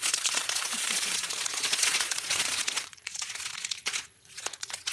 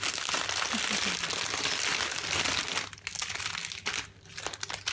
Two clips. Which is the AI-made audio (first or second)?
first